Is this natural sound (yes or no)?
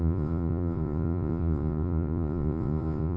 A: no